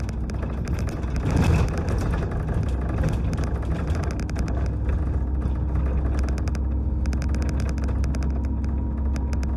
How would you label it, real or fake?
real